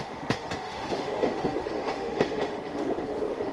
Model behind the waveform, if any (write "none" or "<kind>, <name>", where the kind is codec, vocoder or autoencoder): autoencoder, DAC-VAE